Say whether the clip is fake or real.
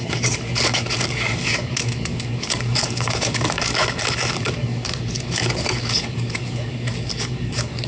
fake